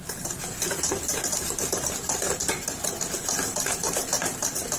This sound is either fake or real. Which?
real